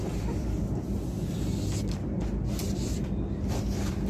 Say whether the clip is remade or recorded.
recorded